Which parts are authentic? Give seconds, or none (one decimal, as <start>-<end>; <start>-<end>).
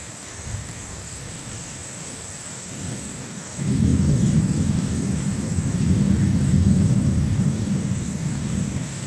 none